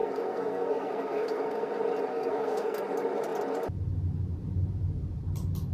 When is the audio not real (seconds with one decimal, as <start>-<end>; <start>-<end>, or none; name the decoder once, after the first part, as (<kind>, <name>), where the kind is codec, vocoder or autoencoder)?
0.0-1.7 (codec, SNAC); 2.1-2.8